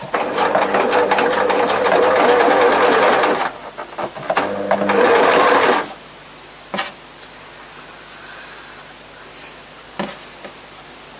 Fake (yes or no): no